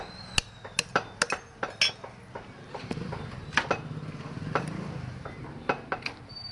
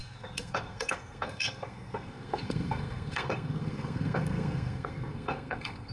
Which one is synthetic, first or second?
second